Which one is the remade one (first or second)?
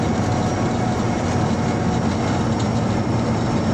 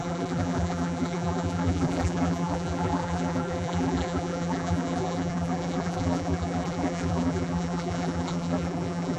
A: second